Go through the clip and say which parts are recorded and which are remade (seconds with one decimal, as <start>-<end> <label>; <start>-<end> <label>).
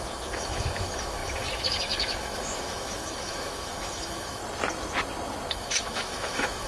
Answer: 0.0-4.4 remade; 4.4-5.5 recorded; 5.5-6.7 remade